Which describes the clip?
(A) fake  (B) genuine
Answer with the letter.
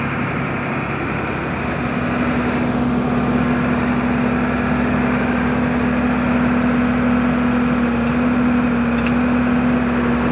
B